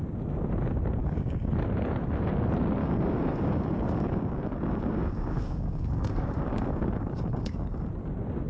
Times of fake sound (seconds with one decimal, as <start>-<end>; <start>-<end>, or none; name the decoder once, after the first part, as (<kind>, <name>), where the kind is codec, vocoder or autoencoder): 1.0-1.5 (codec, DAC); 2.8-7.9